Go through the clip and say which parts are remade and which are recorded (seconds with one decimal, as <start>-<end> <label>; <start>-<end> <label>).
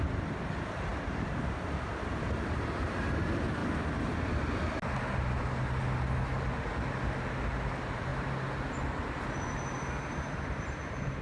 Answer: 0.0-3.6 remade; 3.6-7.3 recorded; 7.3-8.1 remade; 8.1-9.1 recorded; 9.1-11.2 remade